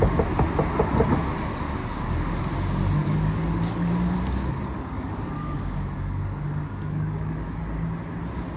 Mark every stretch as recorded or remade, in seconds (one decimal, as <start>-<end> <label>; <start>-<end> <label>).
0.0-1.8 recorded; 1.8-2.4 remade; 2.4-3.0 recorded; 3.0-7.6 remade; 7.6-8.6 recorded